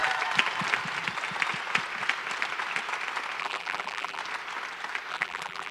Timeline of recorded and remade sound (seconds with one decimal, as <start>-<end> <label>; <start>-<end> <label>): 0.0-3.4 recorded; 3.4-4.2 remade; 4.2-5.1 recorded; 5.1-5.7 remade